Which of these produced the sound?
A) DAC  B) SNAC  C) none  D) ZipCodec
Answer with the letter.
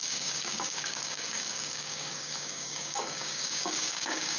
A